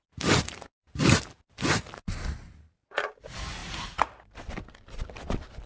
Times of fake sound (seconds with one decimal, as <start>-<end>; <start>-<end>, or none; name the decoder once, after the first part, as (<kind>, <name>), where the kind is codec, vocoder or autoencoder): none